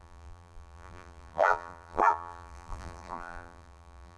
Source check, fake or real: fake